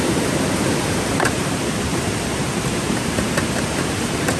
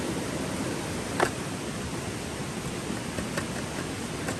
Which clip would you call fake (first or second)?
first